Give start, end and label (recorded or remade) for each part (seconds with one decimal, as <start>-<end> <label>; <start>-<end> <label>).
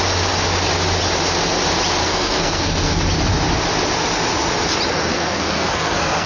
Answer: 0.0-2.0 recorded; 2.0-3.0 remade; 3.0-5.1 recorded; 5.1-6.3 remade